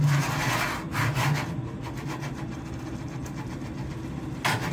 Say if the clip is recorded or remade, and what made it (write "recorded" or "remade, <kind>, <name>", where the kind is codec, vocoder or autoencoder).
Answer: recorded